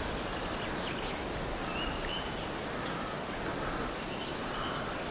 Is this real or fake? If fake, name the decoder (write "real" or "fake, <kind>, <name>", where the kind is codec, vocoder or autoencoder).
real